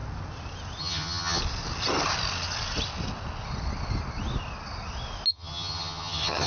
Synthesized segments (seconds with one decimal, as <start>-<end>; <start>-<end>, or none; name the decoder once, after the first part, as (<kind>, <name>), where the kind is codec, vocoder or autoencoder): 0.8-1.4 (vocoder, HiFi-GAN); 5.3-6.5